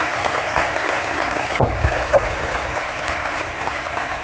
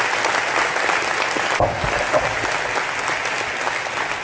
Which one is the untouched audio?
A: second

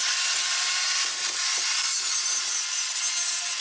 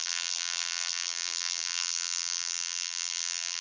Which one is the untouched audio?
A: first